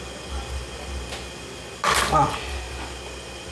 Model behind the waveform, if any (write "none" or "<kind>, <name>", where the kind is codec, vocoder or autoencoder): none